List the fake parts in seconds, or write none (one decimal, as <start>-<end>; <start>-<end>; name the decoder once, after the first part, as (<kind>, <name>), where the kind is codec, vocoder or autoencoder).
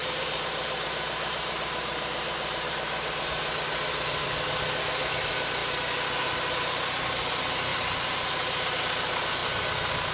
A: 0.0-2.7 (vocoder, BigVGAN v2); 7.7-8.8